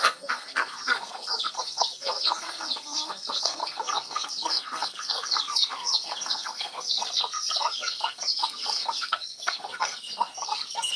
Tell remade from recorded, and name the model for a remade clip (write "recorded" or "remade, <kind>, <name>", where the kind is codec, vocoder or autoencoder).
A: remade, codec, SNAC